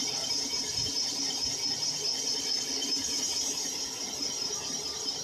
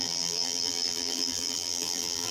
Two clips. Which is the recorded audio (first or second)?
first